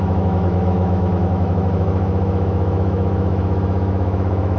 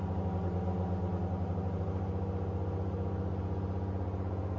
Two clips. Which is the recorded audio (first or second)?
second